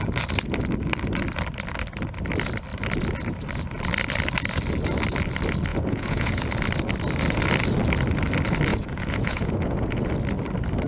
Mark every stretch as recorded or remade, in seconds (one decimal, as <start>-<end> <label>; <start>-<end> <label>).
0.0-5.7 recorded; 5.7-6.4 remade; 6.4-8.7 recorded; 8.7-10.1 remade; 10.1-10.9 recorded